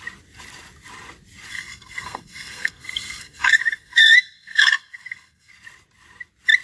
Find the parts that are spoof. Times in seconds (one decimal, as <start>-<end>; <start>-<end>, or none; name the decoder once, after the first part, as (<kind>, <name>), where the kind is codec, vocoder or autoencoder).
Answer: 1.5-5.5 (codec, SNAC)